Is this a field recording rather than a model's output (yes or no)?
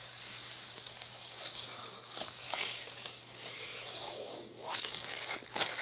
no